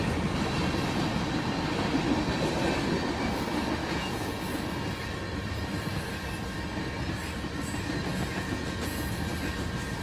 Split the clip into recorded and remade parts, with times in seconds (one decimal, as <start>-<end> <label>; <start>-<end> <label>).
0.0-3.8 recorded; 3.8-4.4 remade; 4.4-8.1 recorded; 8.1-9.1 remade; 9.1-10.0 recorded